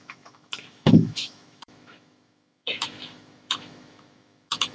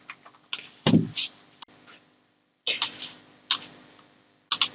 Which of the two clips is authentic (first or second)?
second